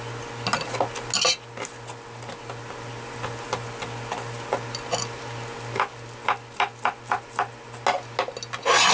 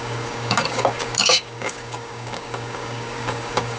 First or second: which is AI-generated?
second